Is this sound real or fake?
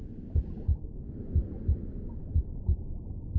real